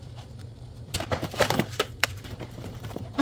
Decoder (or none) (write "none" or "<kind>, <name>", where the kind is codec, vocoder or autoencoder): vocoder, BigVGAN v2